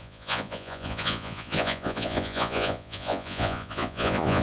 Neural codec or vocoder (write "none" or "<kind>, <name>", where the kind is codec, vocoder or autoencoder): vocoder, Vocos